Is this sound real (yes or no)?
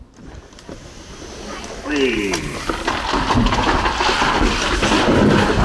yes